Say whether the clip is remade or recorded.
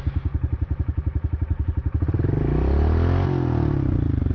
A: recorded